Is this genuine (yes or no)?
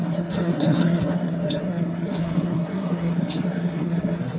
no